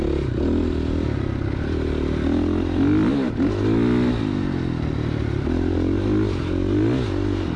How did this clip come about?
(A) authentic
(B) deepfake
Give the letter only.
A